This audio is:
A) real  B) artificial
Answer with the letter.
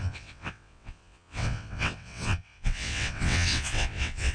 B